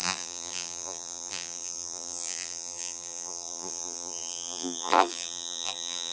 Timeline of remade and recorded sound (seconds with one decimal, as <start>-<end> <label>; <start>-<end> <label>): 0.0-6.1 remade